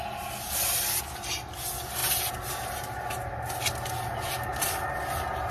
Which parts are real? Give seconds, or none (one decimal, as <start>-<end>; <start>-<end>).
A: 0.0-5.5